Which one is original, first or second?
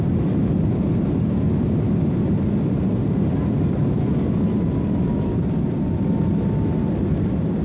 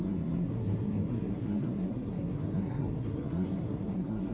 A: first